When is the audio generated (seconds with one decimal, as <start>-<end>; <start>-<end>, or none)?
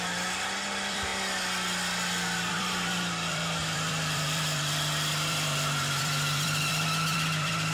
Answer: 0.0-1.1; 2.5-7.7